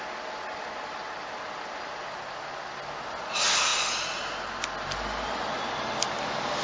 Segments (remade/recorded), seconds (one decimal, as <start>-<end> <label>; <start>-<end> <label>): 0.0-3.7 recorded; 3.7-4.2 remade; 4.2-6.6 recorded